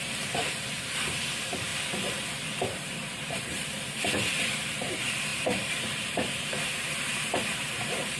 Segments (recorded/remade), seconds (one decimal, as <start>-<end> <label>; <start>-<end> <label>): 0.0-1.7 remade; 1.7-2.4 recorded; 2.4-8.2 remade